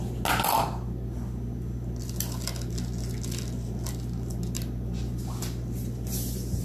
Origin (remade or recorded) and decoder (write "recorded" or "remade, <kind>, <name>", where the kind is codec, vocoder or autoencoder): recorded